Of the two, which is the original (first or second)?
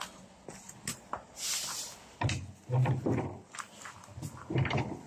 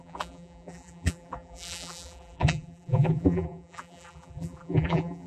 first